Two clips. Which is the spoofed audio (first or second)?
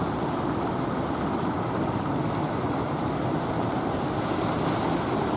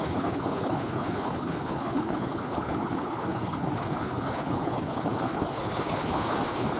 second